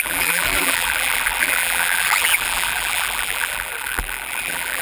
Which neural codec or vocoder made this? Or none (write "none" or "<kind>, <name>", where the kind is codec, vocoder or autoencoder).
vocoder, BigVGAN v2